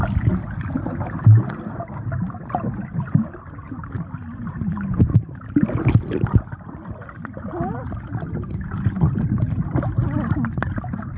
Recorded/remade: recorded